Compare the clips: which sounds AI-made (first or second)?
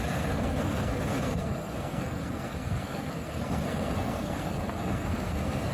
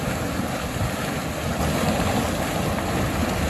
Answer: first